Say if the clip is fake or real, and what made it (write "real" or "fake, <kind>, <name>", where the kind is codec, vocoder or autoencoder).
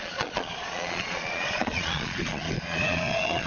fake, vocoder, Vocos